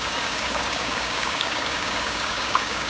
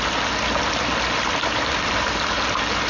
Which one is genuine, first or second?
second